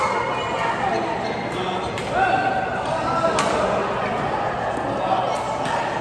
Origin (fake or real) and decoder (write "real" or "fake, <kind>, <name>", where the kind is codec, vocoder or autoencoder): real